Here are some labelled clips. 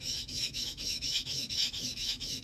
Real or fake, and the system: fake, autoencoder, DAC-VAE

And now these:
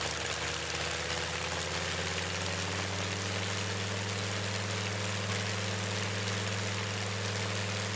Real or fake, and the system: real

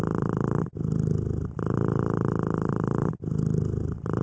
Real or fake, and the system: real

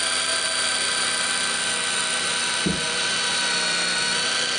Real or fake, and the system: real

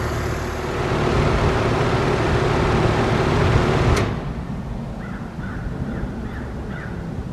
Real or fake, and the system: real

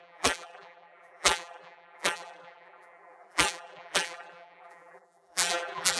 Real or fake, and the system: fake, vocoder, BigVGAN v2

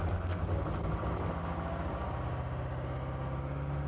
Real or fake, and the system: real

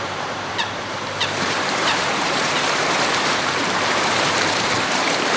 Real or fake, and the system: fake, vocoder, BigVGAN v2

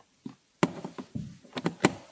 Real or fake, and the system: real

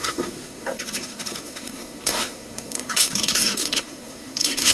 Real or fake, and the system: fake, codec, SNAC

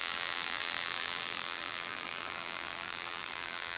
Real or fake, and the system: fake, vocoder, BigVGAN v2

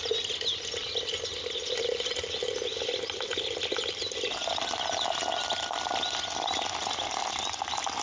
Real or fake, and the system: real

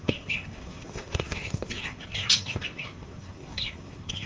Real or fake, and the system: fake, codec, SNAC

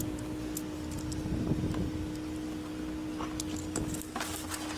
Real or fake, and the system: real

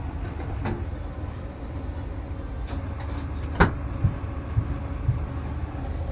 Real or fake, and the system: real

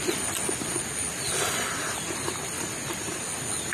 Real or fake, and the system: real